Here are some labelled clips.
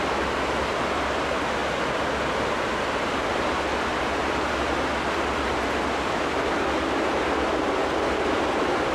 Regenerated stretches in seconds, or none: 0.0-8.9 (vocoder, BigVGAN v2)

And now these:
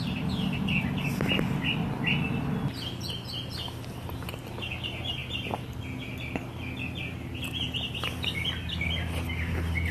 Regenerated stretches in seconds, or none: 5.2-5.8 (vocoder, BigVGAN v2)

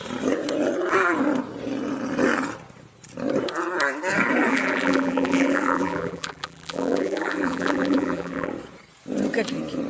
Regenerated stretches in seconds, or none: 4.5-8.5 (vocoder, BigVGAN v2)

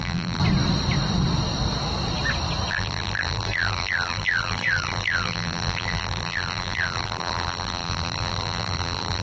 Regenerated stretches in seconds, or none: 0.0-0.4 (vocoder, BigVGAN v2); 2.7-9.2

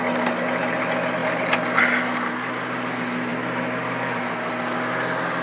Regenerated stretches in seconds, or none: none

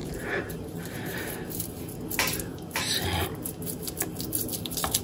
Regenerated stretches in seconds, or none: 0.0-2.0 (vocoder, BigVGAN v2)